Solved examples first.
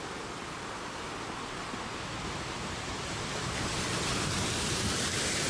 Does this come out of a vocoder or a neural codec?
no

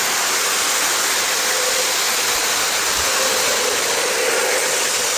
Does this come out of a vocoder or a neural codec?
no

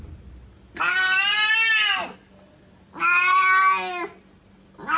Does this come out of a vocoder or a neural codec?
no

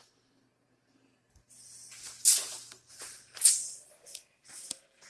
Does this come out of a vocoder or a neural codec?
no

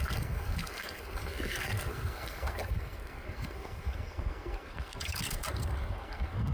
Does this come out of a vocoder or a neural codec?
yes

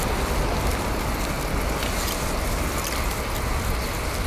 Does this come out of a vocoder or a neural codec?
no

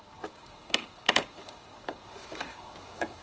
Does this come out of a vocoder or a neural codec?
yes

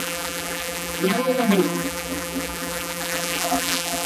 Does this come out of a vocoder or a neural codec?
yes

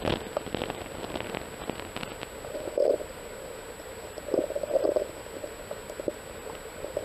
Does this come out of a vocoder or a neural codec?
no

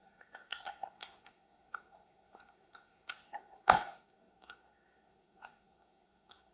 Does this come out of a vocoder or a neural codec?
yes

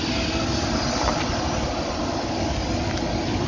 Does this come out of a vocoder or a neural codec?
no